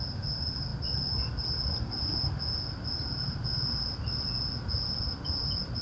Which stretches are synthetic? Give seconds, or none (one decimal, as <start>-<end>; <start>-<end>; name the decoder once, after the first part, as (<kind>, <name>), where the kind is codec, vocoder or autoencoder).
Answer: none